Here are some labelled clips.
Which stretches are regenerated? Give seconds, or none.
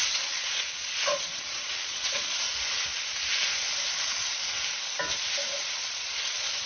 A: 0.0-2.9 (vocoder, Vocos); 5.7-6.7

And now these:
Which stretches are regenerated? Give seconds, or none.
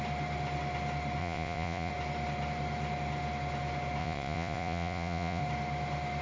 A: 1.2-1.9 (vocoder, Vocos); 4.0-5.4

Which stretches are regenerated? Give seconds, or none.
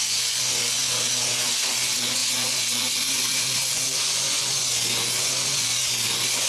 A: 0.0-6.5 (vocoder, Vocos)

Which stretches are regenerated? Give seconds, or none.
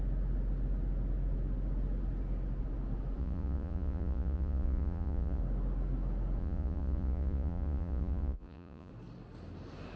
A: 3.2-5.4 (vocoder, Vocos); 6.4-8.9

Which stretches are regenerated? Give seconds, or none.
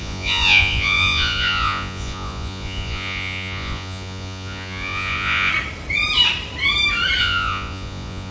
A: 0.0-5.5 (vocoder, Vocos); 7.2-8.3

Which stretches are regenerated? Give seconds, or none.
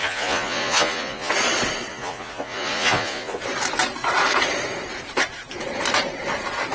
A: 0.0-1.3 (vocoder, Vocos); 1.9-3.4